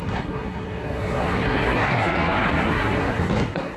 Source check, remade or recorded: remade